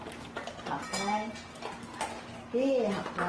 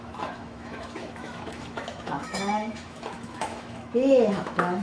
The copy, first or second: second